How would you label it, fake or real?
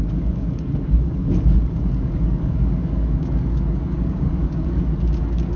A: fake